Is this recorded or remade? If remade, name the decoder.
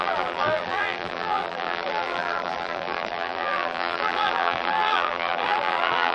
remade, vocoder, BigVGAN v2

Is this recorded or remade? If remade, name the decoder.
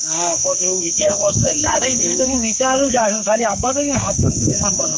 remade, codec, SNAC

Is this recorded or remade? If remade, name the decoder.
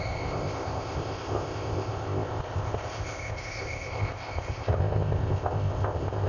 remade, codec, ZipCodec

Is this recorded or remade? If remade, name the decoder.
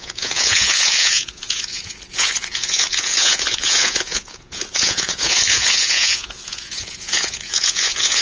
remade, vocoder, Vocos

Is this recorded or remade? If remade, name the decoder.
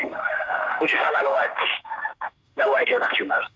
remade, autoencoder, DAC-VAE